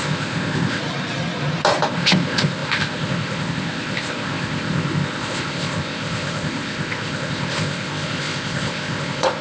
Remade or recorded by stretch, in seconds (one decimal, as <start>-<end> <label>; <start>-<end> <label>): 0.0-0.8 remade; 0.8-1.9 recorded; 1.9-9.4 remade